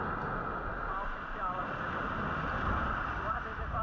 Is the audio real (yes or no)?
yes